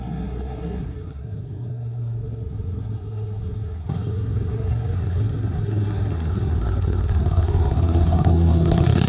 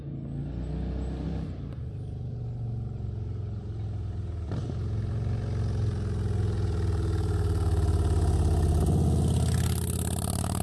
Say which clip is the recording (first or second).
second